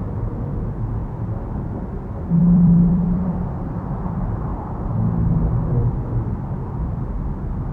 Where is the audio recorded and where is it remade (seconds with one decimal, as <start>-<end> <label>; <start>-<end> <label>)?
0.0-2.4 recorded; 2.4-3.8 remade; 3.8-7.7 recorded